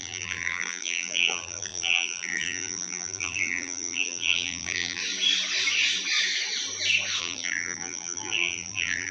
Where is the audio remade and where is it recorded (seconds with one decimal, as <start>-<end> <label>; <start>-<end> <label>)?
0.0-5.0 remade; 5.0-7.2 recorded; 7.2-9.1 remade